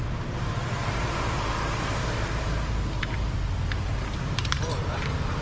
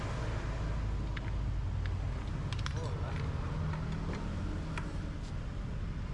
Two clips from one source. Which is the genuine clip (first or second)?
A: second